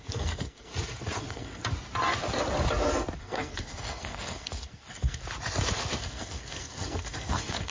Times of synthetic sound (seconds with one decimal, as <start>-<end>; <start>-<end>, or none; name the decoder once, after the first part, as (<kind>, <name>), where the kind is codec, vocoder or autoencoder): 0.0-0.7 (codec, SNAC); 1.2-1.6; 3.2-5.2; 6.0-7.7